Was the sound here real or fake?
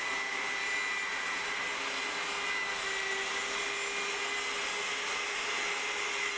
real